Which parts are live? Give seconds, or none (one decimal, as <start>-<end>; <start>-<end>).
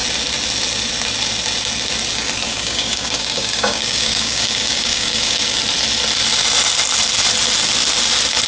0.0-2.5; 5.6-8.5